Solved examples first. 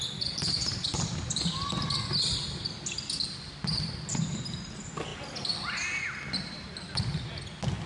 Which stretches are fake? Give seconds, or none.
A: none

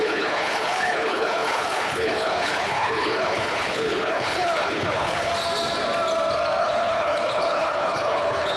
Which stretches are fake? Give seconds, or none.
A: 0.0-5.3; 6.6-8.6

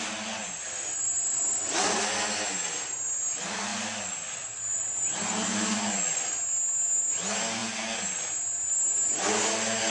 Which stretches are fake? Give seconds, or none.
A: none

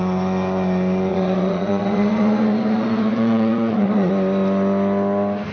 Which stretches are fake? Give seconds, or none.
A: 1.1-4.1